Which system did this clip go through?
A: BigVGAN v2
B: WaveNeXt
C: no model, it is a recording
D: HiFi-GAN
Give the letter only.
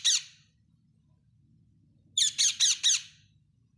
C